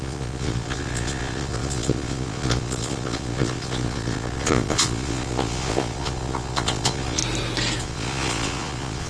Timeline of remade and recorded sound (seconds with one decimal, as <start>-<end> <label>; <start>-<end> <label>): 0.0-7.2 remade; 7.2-7.8 recorded; 7.8-9.1 remade